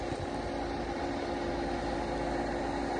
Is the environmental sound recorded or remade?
recorded